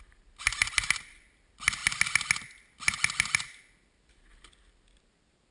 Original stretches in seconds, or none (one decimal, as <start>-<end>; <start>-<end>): 0.0-5.5